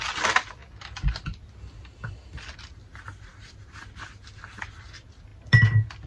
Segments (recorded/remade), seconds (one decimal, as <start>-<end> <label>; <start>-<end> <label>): 0.0-6.1 recorded